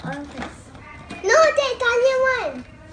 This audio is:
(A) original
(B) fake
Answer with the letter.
A